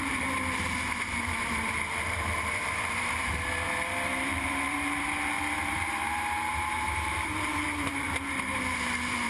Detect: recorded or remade remade